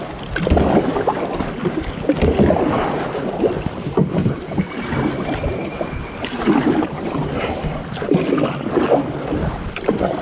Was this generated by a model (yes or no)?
no